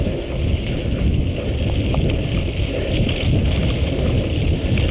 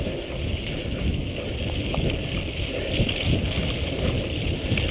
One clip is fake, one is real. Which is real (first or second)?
first